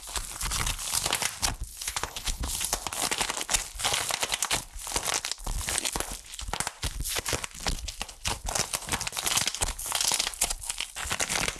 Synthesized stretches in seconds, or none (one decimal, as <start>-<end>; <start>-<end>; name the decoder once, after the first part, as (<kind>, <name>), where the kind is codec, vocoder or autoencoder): 1.7-2.5 (codec, HILCodec)